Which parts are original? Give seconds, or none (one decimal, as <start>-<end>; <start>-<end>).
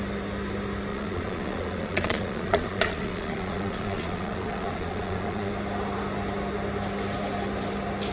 0.0-0.9; 5.5-8.1